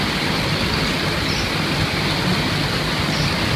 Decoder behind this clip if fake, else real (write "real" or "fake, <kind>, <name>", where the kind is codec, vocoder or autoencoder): real